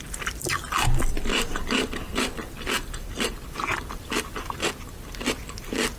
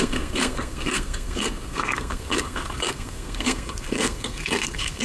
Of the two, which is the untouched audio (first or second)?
first